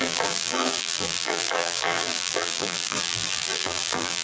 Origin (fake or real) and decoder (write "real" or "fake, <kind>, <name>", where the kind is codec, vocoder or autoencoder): fake, vocoder, BigVGAN v2